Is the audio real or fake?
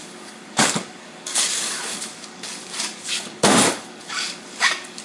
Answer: fake